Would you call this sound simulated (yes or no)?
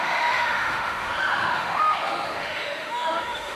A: yes